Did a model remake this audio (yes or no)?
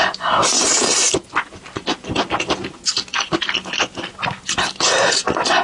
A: no